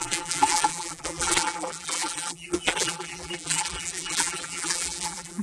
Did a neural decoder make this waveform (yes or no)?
yes